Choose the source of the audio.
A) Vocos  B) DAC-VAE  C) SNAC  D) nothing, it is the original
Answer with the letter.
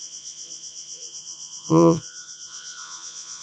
A